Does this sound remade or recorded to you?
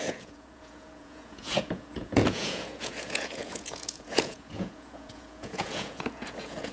remade